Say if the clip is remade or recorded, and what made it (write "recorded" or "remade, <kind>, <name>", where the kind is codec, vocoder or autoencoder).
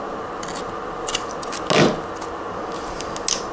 recorded